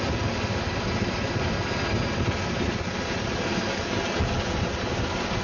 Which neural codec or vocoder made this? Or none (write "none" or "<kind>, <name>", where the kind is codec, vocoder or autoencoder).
none